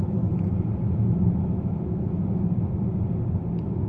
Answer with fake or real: real